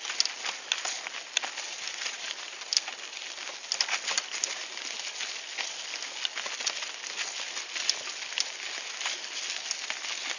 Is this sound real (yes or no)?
yes